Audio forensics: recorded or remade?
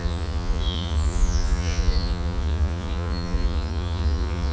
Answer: remade